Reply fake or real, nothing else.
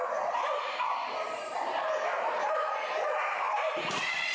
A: fake